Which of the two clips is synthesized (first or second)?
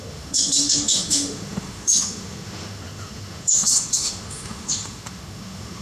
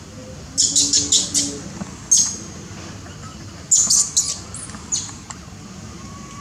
first